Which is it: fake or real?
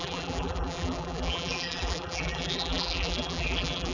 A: fake